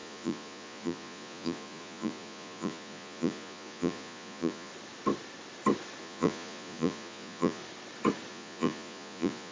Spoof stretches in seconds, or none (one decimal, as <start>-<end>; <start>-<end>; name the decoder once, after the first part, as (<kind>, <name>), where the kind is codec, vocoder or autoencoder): 0.0-4.7 (vocoder, Vocos); 6.0-7.6; 8.3-9.5